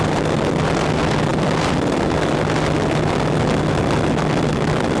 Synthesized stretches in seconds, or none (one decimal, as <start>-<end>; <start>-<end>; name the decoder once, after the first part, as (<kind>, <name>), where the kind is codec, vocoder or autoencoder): none